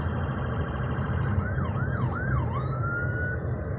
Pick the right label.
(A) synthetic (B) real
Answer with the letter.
B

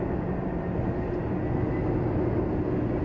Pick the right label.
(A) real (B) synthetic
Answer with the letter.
A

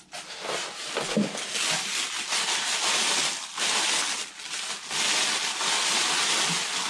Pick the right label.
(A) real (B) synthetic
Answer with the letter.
A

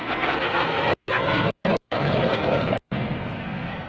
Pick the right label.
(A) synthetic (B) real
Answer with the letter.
A